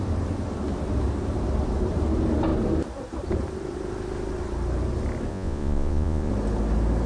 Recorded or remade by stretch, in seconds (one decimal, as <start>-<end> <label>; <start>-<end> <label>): 0.0-5.3 recorded; 5.3-6.3 remade; 6.3-7.1 recorded